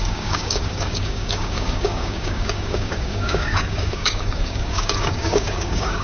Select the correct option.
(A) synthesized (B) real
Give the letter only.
A